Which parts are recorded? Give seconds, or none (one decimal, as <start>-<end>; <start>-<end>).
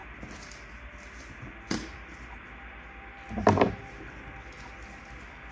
0.0-5.5